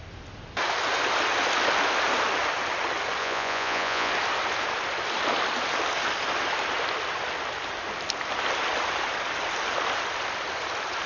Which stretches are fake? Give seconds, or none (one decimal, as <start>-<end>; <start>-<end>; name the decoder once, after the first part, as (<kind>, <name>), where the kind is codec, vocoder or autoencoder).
3.2-4.1 (vocoder, Vocos)